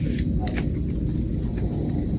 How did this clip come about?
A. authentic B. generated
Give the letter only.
A